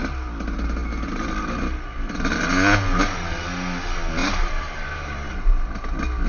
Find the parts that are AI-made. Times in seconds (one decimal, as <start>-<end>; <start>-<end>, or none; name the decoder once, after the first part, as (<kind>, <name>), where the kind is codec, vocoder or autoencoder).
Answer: 4.2-5.7 (vocoder, BigVGAN v2)

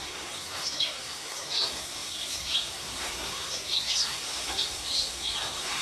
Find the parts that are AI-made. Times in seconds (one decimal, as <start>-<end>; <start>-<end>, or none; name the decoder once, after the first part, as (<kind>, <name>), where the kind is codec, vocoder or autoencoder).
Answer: 0.0-5.8 (codec, SNAC)

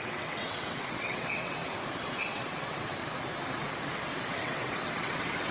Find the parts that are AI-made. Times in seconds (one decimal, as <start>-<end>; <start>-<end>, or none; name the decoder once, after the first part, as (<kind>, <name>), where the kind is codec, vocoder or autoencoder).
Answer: 0.0-1.6 (vocoder, WaveNeXt); 2.2-2.9; 4.3-5.5

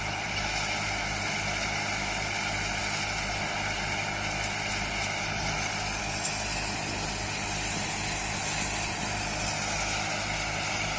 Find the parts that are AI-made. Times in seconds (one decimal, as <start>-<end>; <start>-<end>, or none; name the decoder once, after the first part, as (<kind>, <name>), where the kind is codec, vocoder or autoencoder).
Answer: none

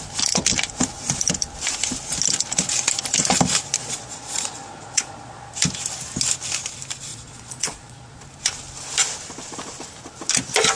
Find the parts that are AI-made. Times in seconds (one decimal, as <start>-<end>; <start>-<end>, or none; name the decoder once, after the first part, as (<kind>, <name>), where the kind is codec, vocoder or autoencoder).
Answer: 3.8-5.5 (vocoder, Vocos); 7.1-8.2

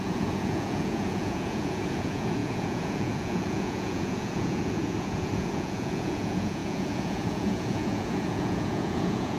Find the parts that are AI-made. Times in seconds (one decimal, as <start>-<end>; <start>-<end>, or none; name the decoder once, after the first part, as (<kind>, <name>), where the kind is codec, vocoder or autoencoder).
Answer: 0.0-9.4 (vocoder, Vocos)